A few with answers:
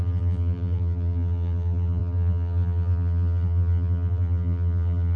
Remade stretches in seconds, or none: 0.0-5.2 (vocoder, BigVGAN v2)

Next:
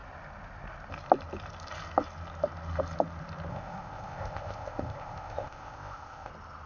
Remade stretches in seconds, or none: 3.5-6.3 (codec, ZipCodec)

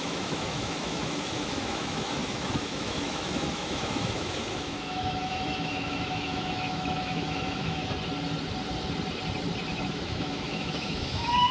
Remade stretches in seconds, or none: 0.0-7.8 (autoencoder, DAC-VAE); 9.7-11.5

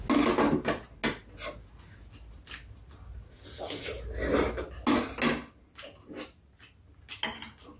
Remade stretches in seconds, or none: none

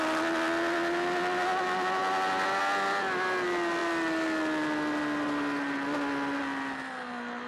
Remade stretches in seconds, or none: none

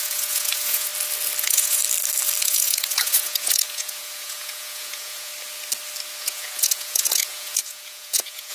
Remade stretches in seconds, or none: 0.0-0.9 (vocoder, Vocos); 1.4-1.8; 2.4-5.3; 6.2-8.5

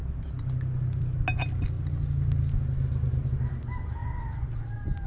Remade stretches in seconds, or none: none